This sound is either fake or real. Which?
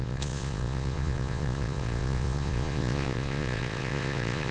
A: fake